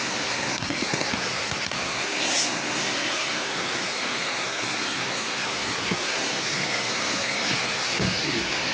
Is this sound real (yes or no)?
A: no